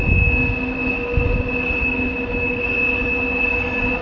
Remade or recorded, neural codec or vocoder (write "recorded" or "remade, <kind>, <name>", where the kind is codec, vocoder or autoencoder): recorded